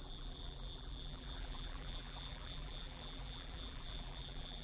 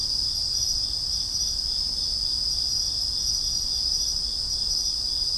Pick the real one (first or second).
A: second